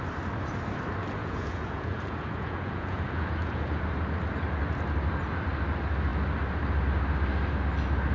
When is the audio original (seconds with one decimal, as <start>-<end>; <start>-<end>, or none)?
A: 0.0-1.2; 3.8-8.1